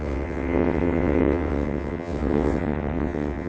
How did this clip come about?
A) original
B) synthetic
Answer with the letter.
B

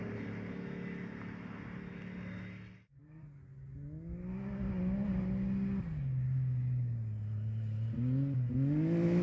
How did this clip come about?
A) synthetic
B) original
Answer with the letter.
B